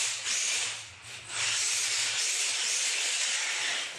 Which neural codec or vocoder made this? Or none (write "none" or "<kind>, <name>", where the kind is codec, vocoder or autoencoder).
none